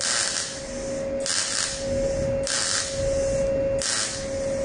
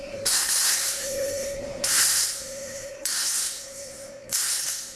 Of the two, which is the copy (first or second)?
second